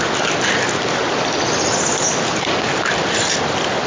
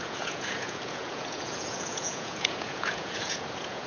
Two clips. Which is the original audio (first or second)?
first